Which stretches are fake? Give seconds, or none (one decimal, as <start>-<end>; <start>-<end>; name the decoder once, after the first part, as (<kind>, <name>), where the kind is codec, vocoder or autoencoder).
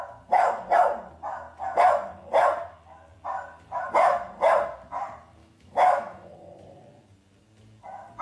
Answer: 5.4-6.3 (autoencoder, DAC-VAE)